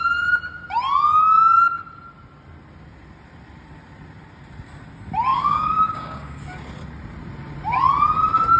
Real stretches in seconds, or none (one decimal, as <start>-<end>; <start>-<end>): 0.0-5.3; 6.4-8.6